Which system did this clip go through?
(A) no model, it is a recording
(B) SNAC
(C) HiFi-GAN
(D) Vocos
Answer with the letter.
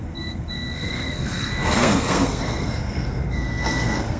B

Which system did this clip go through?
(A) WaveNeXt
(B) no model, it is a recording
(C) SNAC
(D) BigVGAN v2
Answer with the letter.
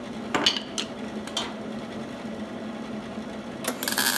B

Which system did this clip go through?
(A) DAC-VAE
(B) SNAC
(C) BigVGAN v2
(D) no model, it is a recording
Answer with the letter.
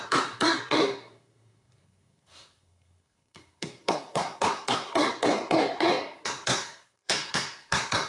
B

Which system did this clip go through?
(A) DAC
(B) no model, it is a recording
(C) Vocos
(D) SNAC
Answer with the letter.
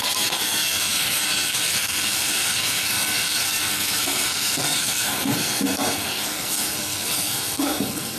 D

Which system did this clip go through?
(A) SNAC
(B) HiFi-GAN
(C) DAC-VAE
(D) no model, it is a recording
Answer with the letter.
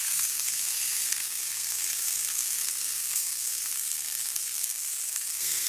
A